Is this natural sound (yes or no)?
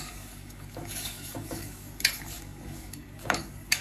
no